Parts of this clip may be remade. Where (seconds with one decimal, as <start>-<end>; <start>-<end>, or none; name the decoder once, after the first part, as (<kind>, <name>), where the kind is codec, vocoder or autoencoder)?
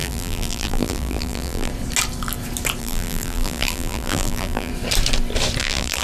0.0-1.7 (vocoder, BigVGAN v2); 2.8-4.7; 5.6-6.0